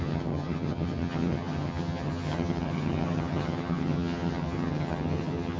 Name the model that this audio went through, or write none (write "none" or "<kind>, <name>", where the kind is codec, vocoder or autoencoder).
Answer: vocoder, HiFi-GAN